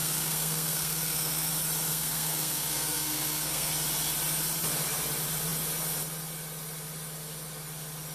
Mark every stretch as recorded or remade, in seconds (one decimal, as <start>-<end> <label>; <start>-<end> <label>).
0.0-1.5 remade; 1.5-1.9 recorded; 1.9-3.7 remade; 3.7-8.1 recorded